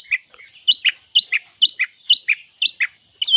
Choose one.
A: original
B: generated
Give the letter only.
A